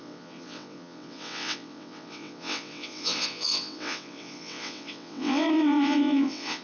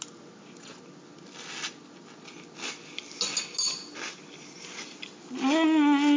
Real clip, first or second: second